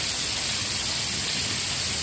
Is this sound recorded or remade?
recorded